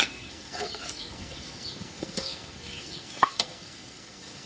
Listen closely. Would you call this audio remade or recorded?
remade